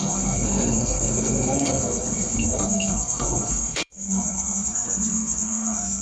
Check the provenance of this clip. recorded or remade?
remade